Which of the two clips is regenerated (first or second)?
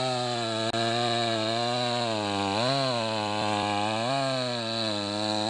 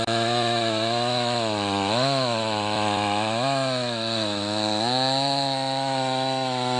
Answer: second